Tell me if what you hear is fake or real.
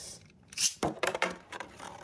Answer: fake